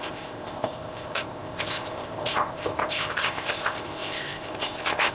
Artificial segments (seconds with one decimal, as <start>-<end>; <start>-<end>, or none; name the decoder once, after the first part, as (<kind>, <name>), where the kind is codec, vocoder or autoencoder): 0.0-5.1 (codec, ZipCodec)